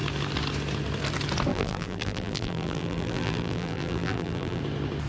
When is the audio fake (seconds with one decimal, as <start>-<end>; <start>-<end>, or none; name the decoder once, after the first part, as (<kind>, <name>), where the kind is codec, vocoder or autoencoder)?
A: 1.5-4.6 (vocoder, BigVGAN v2)